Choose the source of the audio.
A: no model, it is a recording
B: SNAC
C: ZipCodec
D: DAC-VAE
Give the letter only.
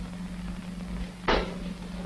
A